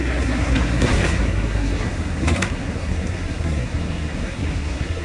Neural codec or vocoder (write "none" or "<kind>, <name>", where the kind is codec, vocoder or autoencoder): codec, SNAC